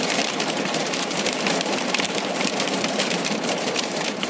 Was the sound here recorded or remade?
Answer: remade